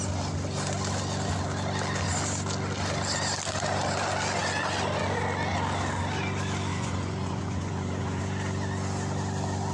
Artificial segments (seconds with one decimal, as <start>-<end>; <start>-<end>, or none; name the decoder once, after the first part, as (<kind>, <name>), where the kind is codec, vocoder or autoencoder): 6.7-8.2 (vocoder, Vocos)